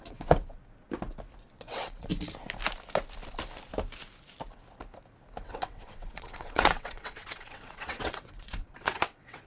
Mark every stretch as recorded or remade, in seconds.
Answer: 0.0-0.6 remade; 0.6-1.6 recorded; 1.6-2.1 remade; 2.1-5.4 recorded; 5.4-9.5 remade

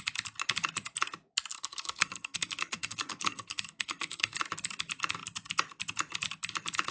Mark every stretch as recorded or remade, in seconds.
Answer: 0.0-1.5 recorded; 1.5-4.4 remade; 4.4-6.9 recorded

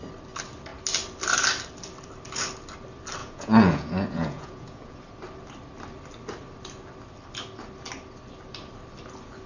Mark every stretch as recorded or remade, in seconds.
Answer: 0.0-3.2 recorded; 3.2-5.0 remade; 5.0-9.5 recorded